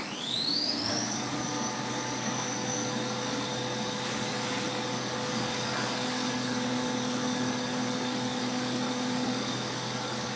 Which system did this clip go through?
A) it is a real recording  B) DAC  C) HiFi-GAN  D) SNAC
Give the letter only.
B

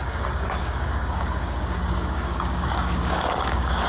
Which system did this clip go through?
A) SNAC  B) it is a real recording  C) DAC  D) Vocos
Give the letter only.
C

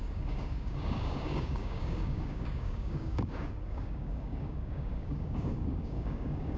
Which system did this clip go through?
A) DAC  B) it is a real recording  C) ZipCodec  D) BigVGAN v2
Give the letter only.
A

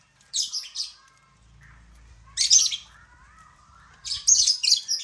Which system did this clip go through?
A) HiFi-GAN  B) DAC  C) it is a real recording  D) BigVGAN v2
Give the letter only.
C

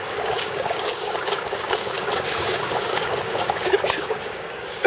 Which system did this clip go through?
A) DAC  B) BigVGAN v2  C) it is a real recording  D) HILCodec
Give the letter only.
A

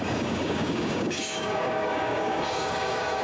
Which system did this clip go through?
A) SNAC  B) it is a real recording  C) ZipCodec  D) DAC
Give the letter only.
D